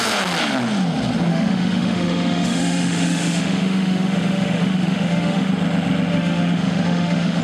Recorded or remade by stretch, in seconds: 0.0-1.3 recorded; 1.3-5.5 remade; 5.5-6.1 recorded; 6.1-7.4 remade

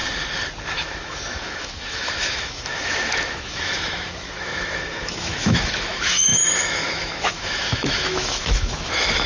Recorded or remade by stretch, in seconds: 0.0-0.7 recorded; 0.7-9.3 remade